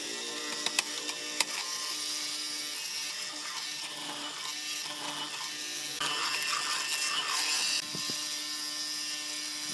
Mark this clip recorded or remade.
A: recorded